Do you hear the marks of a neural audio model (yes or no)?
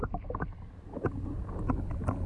no